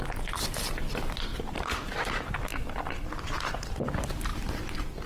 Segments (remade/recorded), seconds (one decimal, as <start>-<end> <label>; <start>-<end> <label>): 0.0-1.3 recorded; 1.3-2.1 remade; 2.1-2.5 recorded; 2.5-3.3 remade; 3.3-5.1 recorded